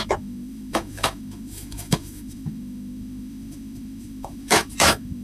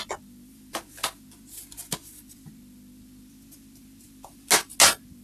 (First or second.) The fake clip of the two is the first